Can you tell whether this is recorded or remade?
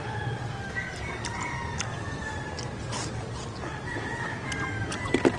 recorded